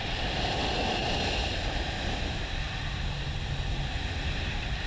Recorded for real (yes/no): yes